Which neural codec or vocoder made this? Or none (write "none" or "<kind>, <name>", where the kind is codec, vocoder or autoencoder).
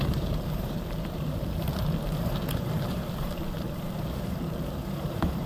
vocoder, BigVGAN v2